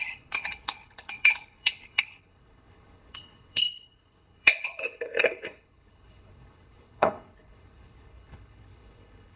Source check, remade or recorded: remade